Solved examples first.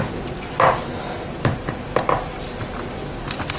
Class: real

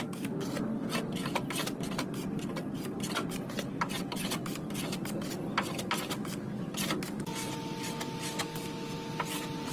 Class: real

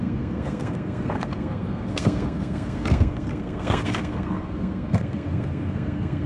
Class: fake